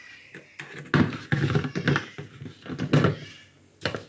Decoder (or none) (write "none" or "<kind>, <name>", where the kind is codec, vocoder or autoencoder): none